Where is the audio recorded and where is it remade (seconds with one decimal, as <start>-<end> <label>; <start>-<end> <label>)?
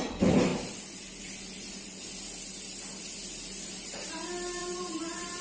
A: 0.0-4.6 recorded; 4.6-5.4 remade